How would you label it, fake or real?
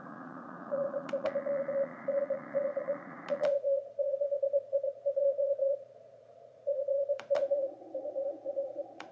fake